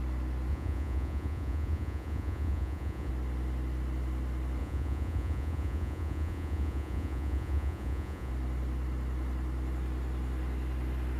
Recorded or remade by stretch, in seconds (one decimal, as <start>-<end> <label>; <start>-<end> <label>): 0.0-0.5 recorded; 0.5-3.1 remade; 3.1-4.6 recorded; 4.6-8.3 remade; 8.3-11.2 recorded